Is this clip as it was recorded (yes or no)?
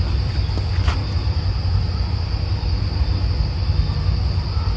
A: yes